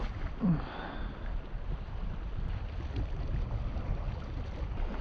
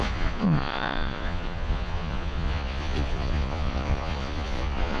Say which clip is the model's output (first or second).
second